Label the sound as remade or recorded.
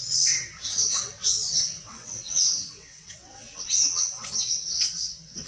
remade